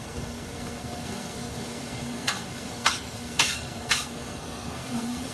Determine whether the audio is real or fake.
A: fake